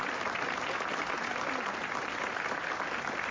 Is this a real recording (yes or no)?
yes